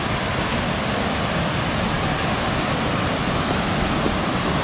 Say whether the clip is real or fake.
real